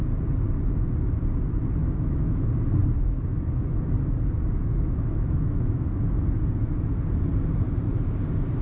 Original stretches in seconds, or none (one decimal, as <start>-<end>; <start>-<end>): 0.0-1.8; 2.4-4.6; 6.4-8.6